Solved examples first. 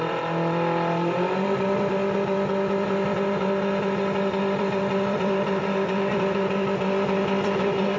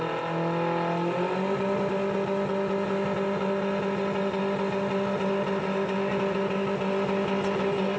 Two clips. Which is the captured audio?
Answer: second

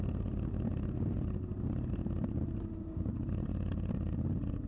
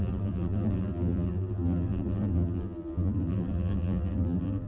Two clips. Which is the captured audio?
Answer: first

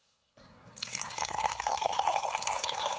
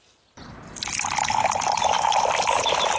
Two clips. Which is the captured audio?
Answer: second